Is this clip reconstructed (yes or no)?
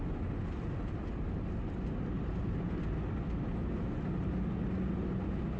no